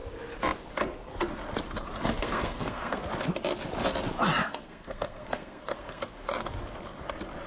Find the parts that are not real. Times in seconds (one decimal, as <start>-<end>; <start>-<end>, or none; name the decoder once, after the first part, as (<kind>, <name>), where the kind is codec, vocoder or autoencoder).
2.2-3.0 (codec, SNAC); 4.4-6.5